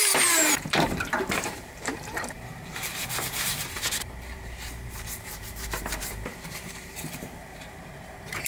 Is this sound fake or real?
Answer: fake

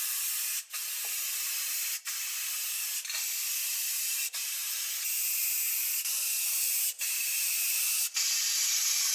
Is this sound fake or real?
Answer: fake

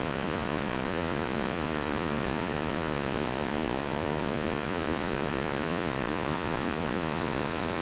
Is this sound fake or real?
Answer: fake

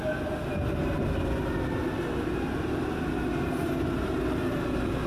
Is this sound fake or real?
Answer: real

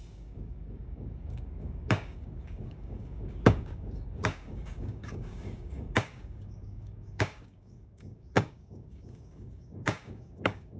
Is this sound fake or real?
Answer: fake